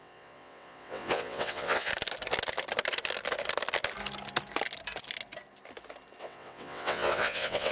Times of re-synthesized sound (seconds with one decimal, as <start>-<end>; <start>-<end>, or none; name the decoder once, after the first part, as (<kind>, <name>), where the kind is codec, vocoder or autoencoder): 0.0-1.9 (vocoder, WaveNeXt); 6.2-7.7